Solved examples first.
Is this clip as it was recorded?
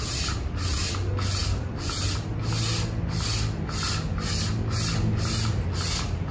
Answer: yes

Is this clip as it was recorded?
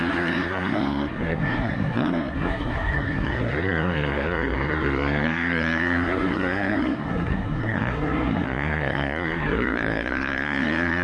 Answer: no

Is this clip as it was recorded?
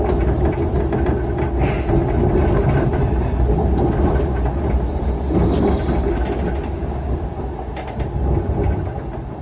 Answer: yes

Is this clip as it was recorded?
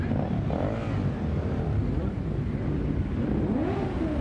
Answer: yes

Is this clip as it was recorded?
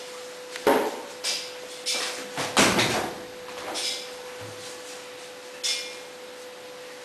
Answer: yes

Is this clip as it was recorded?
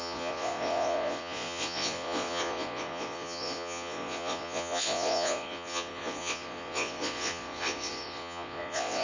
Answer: no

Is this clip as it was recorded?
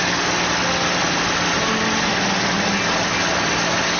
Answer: yes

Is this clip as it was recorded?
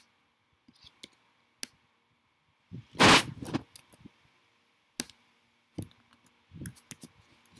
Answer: yes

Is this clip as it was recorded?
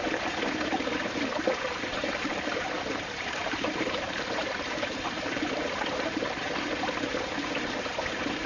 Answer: no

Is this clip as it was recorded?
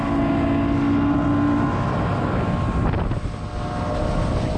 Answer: yes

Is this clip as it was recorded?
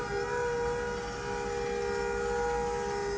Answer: yes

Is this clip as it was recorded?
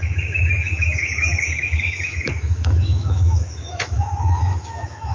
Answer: no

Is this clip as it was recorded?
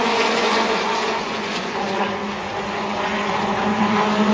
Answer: no